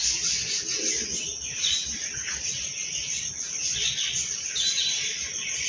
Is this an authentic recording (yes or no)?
yes